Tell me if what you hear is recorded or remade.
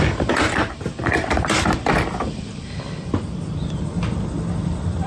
recorded